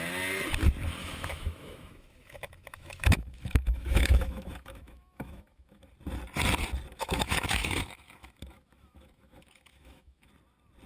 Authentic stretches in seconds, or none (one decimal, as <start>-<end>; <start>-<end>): 0.0-1.0; 5.8-6.9; 10.3-10.9